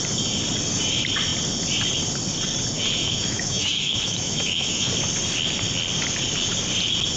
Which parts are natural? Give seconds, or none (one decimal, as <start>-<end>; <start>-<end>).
0.0-3.0; 4.9-7.2